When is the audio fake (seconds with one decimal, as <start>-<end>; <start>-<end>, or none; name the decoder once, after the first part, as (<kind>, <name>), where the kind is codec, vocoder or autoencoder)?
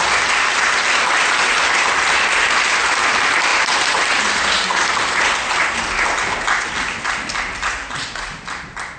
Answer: 3.5-4.2 (vocoder, BigVGAN v2)